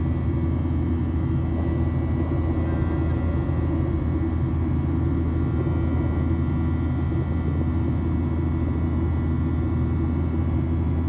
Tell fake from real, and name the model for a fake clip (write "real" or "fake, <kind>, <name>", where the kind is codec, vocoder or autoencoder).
real